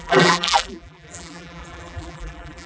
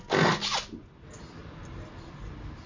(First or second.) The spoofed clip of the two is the first